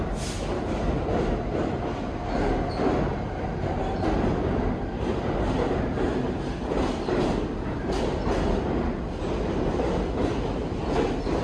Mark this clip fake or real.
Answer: real